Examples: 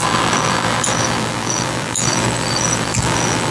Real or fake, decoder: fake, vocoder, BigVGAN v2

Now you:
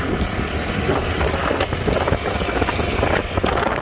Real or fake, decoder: real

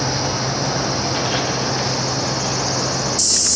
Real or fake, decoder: real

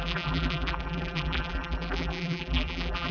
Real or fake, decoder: fake, vocoder, BigVGAN v2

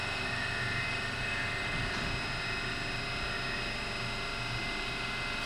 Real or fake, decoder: real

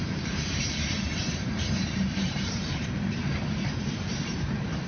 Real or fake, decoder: fake, vocoder, BigVGAN v2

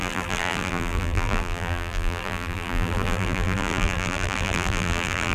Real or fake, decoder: fake, vocoder, BigVGAN v2